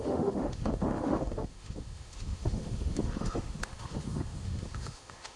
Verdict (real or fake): fake